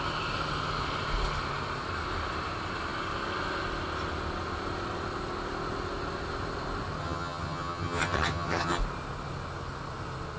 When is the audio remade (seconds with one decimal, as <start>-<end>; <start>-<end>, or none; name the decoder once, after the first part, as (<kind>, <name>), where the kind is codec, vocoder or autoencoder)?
7.0-8.8 (vocoder, HiFi-GAN)